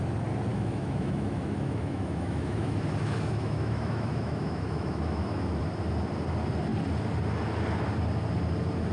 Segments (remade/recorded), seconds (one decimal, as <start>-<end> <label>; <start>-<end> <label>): 0.0-0.5 recorded; 0.5-5.6 remade; 5.6-8.9 recorded